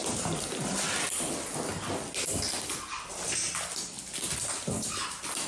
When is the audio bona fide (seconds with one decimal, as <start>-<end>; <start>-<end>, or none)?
0.0-5.5